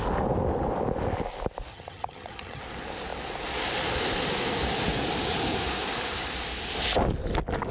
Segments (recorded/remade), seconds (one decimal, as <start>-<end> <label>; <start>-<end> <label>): 0.0-1.7 recorded; 1.7-2.6 remade; 2.6-7.7 recorded